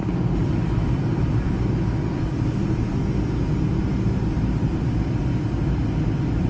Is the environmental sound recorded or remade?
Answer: recorded